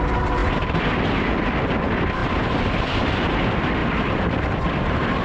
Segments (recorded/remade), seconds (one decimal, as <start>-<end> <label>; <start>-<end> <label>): 0.0-2.2 recorded; 2.2-2.7 remade; 2.7-5.2 recorded